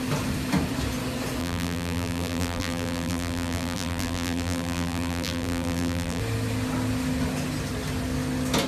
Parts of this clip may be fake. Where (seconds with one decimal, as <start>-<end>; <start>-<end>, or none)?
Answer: 1.4-6.2